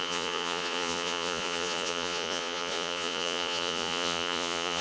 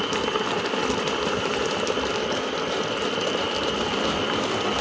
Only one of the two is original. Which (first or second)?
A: second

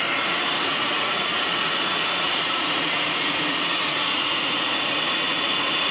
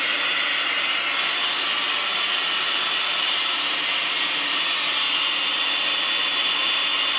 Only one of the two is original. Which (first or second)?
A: second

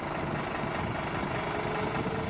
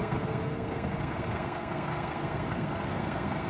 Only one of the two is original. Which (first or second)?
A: first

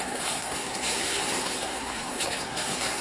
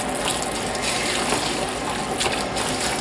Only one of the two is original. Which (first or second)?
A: second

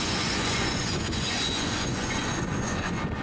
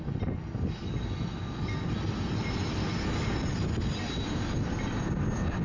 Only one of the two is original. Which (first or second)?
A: second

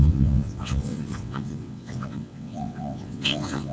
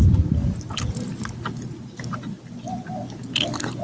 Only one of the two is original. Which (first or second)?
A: second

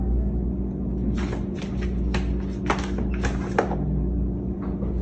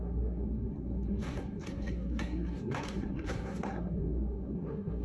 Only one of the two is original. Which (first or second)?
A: first